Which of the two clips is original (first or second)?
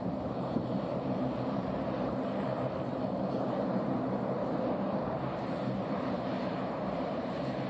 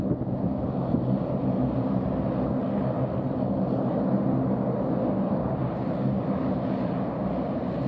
second